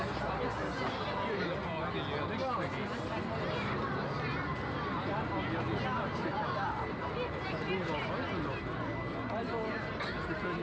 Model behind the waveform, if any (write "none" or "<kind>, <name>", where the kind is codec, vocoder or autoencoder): none